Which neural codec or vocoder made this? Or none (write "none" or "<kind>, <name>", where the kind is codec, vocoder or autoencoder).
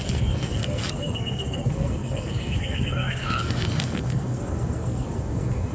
codec, SNAC